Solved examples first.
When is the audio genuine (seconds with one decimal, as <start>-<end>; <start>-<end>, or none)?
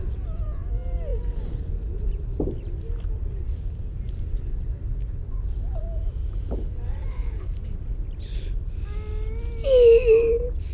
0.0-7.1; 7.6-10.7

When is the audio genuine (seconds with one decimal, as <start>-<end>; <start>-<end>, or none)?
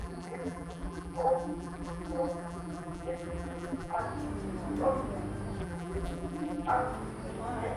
4.0-5.6; 6.7-7.8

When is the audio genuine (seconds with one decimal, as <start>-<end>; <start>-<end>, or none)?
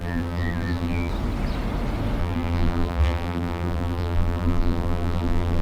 1.1-2.2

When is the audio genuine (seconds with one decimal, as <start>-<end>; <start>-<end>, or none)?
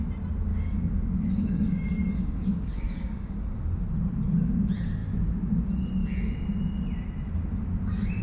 0.0-0.5; 3.6-8.2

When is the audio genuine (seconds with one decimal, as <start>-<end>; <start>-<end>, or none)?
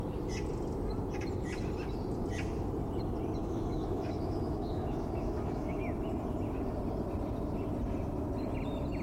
0.0-3.4; 5.8-9.0